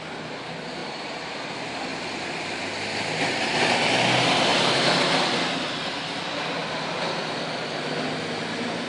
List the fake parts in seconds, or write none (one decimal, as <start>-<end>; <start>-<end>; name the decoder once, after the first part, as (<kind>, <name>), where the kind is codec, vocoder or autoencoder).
0.8-1.5 (vocoder, BigVGAN v2); 4.5-5.1